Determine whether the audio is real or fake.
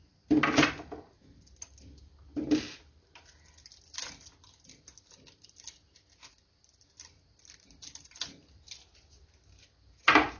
real